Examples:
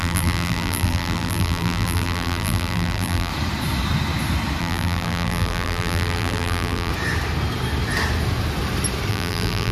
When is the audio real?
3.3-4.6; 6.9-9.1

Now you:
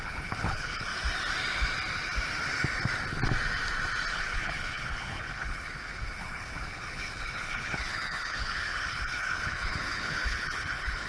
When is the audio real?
0.9-4.1

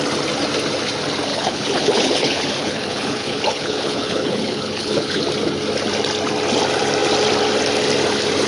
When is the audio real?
0.0-1.3; 5.2-8.5

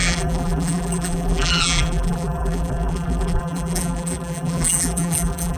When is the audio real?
none